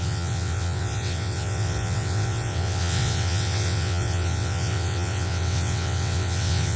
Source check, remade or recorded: remade